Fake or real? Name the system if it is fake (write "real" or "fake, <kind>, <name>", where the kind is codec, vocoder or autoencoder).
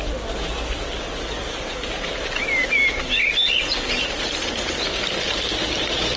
real